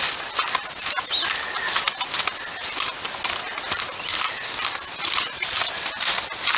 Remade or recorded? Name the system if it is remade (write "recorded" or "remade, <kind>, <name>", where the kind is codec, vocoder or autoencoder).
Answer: recorded